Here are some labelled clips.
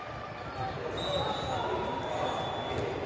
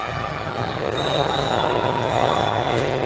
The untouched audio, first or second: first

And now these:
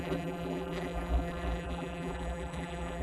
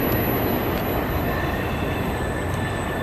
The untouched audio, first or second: second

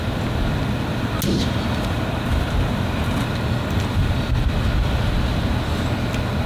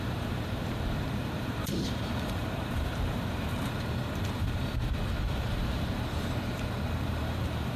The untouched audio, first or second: first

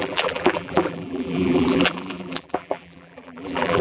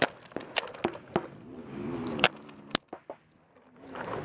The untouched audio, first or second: second